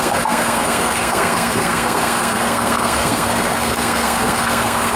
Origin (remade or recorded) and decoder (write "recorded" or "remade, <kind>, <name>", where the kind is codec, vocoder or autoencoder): remade, codec, SNAC